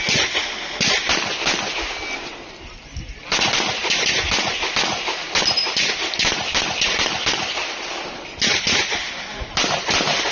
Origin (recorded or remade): recorded